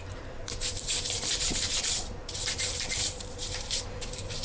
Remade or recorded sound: remade